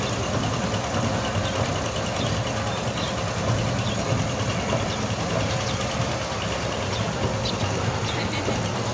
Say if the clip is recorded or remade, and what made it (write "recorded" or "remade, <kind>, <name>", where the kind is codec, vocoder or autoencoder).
recorded